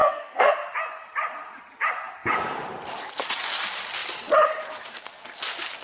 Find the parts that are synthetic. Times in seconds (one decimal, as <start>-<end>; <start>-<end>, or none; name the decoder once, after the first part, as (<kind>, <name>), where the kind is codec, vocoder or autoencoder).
0.0-0.5 (codec, SNAC)

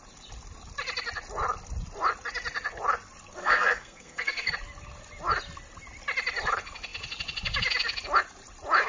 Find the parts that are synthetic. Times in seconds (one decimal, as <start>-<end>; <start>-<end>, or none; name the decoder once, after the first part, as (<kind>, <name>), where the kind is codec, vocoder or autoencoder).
3.4-4.5 (codec, SNAC)

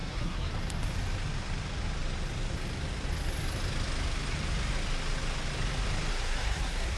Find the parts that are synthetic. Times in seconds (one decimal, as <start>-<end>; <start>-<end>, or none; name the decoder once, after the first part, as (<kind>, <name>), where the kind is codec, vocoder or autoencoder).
0.0-0.5 (codec, SNAC); 6.1-7.0

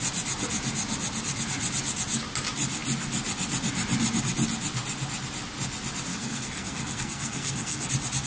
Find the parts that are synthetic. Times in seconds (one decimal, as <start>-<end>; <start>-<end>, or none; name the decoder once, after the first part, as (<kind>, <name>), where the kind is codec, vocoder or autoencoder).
6.1-7.9 (codec, SNAC)

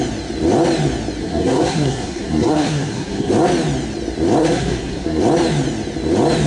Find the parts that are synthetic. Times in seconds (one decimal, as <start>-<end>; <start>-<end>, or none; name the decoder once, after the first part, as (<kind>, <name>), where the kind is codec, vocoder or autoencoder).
1.2-3.3 (codec, SNAC); 4.4-5.2